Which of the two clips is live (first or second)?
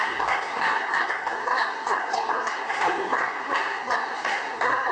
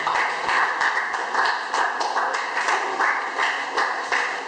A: second